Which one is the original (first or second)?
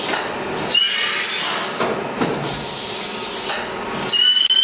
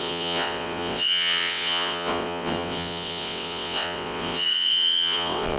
first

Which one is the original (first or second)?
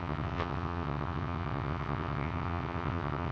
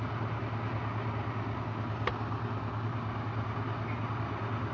second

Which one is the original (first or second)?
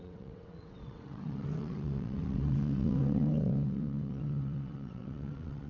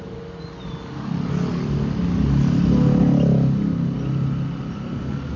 second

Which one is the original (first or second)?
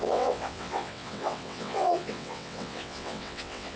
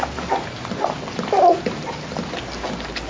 second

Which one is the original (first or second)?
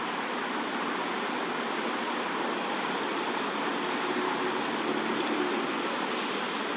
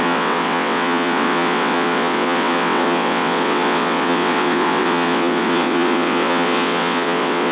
first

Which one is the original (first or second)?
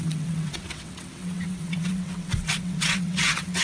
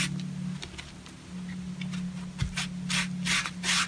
second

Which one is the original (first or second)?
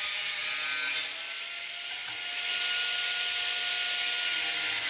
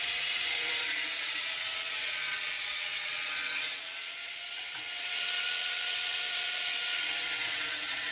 first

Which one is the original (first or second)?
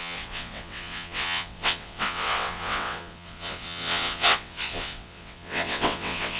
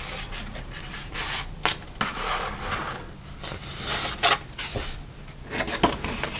second